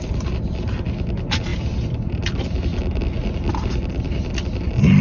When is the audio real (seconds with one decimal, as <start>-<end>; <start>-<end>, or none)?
0.0-5.0